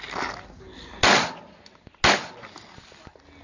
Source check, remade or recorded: recorded